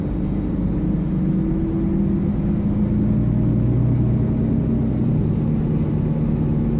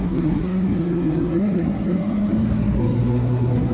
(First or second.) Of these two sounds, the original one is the first